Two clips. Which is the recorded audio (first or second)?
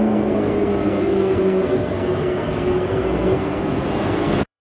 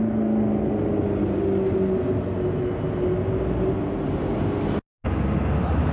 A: second